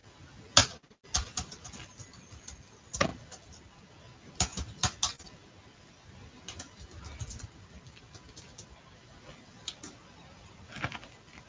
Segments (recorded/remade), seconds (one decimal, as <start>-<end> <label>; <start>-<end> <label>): 0.0-11.5 recorded